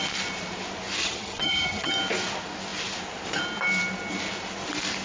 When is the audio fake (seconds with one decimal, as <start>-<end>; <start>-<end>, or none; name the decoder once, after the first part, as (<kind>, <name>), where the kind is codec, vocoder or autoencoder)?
1.0-1.9 (vocoder, HiFi-GAN)